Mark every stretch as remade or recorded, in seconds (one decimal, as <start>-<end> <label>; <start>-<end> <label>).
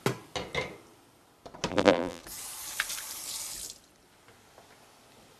0.0-1.7 recorded; 1.7-2.2 remade; 2.2-5.4 recorded